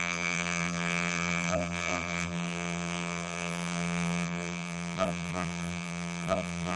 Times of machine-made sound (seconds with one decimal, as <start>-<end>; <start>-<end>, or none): 0.0-6.8